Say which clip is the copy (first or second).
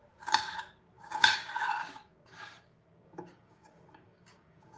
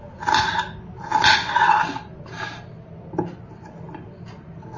first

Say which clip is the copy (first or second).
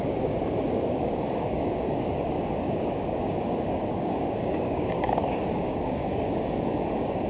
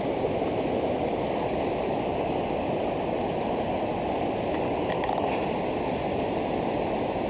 first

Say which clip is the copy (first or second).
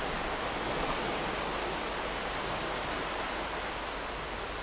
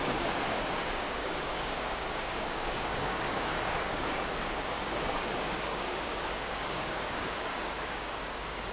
second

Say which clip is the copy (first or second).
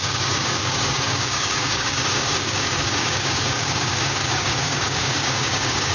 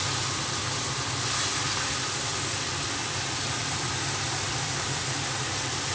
first